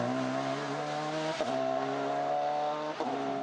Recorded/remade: recorded